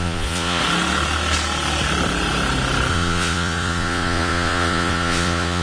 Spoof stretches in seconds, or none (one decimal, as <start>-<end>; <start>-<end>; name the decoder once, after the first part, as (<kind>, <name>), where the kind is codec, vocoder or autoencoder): 0.0-0.6 (vocoder, Vocos); 2.9-5.6